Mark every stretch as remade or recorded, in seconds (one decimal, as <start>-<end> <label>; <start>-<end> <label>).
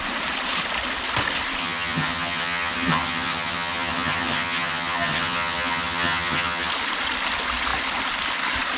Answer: 0.0-1.6 recorded; 1.6-6.7 remade; 6.7-8.8 recorded